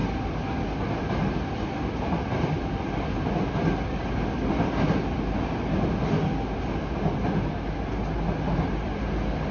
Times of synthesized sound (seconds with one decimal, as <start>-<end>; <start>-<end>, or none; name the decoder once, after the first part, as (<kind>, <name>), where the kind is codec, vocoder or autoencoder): none